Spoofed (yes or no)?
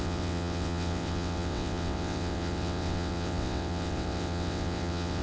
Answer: yes